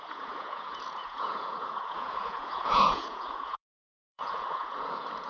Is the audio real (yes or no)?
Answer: no